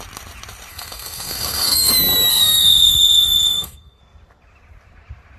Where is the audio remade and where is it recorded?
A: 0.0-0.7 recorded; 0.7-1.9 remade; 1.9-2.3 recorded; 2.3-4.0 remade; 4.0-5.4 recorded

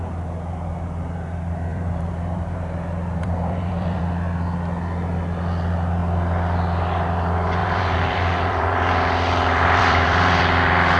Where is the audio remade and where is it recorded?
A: 0.0-1.7 recorded; 1.7-4.0 remade; 4.0-7.6 recorded; 7.6-10.4 remade; 10.4-11.0 recorded

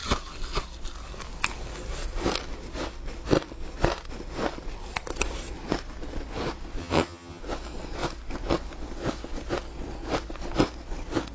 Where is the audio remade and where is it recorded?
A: 0.0-6.8 recorded; 6.8-7.4 remade; 7.4-11.3 recorded

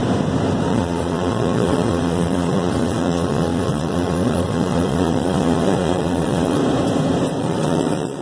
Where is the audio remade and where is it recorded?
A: 0.0-0.7 recorded; 0.7-6.6 remade; 6.6-7.4 recorded; 7.4-8.2 remade